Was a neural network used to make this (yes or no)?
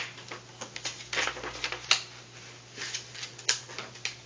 no